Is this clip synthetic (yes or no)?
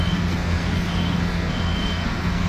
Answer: yes